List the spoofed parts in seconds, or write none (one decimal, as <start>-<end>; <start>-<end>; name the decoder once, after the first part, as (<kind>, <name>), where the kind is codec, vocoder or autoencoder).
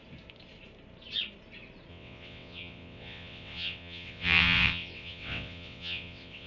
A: 1.9-6.5 (vocoder, WaveNeXt)